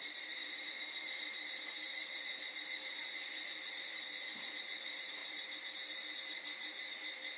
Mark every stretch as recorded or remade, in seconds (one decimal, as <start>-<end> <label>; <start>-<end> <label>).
0.0-7.4 remade